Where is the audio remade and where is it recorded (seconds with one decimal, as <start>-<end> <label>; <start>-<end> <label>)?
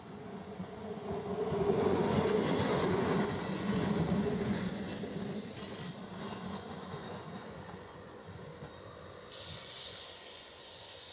0.0-4.9 remade; 4.9-6.5 recorded; 6.5-8.5 remade; 8.5-9.3 recorded; 9.3-11.1 remade